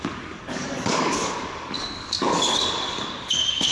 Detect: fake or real fake